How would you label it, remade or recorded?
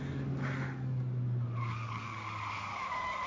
remade